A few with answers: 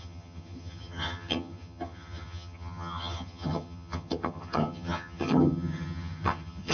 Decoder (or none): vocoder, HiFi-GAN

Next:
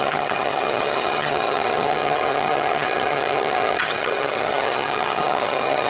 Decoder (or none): vocoder, HiFi-GAN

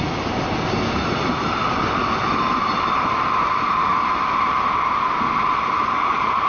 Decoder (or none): none